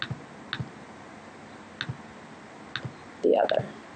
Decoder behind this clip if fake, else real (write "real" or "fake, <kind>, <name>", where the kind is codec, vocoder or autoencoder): real